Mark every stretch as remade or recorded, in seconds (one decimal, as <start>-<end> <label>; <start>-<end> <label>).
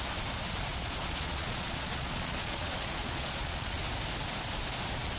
0.0-0.7 recorded; 0.7-3.8 remade; 3.8-5.2 recorded